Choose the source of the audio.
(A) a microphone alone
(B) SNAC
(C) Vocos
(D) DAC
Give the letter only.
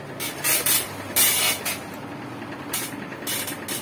A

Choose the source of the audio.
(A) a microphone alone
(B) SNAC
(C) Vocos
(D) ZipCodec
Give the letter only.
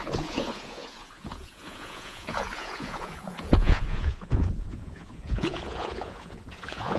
C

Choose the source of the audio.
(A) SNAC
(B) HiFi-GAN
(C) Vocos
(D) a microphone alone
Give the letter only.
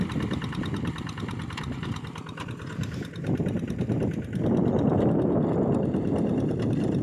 D